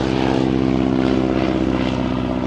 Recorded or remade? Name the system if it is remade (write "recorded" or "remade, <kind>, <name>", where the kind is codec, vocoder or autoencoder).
recorded